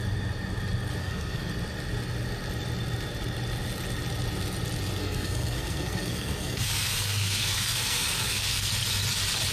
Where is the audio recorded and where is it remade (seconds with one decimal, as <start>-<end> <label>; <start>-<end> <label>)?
0.0-1.0 recorded; 1.0-1.5 remade; 1.5-5.0 recorded; 5.0-8.7 remade; 8.7-9.5 recorded